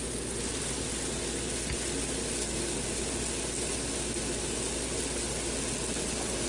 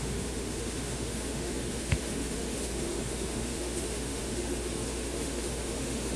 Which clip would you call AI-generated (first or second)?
second